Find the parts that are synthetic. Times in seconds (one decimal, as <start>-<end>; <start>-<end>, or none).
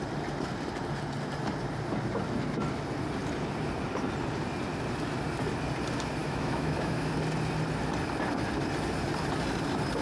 6.2-7.1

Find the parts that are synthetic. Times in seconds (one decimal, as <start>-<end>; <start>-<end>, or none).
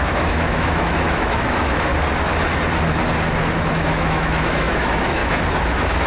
0.0-1.9; 3.7-5.2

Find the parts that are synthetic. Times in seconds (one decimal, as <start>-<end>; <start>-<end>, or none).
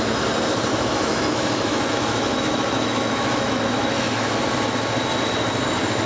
0.7-4.4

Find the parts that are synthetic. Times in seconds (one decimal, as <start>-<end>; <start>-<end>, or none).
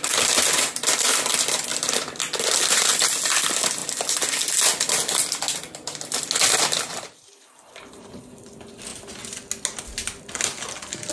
none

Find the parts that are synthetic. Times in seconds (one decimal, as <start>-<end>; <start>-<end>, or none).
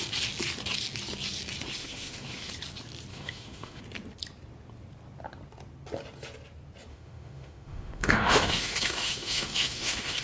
1.8-2.5; 3.1-3.8; 6.9-10.2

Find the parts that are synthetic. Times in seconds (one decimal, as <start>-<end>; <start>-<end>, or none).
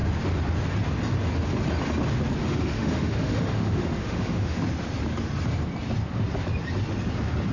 2.4-4.6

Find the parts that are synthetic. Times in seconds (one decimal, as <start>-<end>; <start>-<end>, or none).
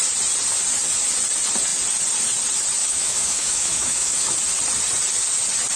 2.8-4.3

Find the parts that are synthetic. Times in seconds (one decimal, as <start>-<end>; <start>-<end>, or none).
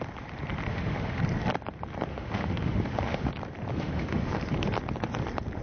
0.7-1.2; 2.1-3.3; 3.7-4.3